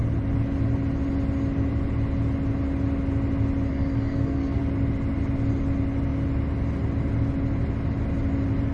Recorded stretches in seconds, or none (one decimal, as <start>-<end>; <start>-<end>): 0.0-3.7; 4.6-8.7